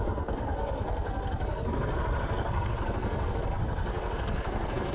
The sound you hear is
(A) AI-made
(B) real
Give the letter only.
A